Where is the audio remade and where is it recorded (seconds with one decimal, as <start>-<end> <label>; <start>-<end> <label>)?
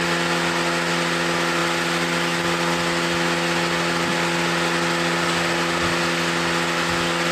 0.0-7.3 recorded